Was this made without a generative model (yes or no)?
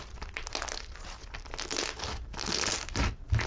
yes